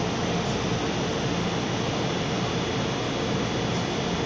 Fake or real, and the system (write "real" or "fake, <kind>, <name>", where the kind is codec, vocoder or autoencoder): real